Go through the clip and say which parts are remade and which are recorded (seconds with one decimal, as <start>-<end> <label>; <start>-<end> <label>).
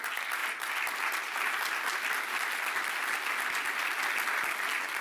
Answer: 0.0-5.0 recorded